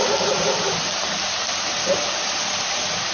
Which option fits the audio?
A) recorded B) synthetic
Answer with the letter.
A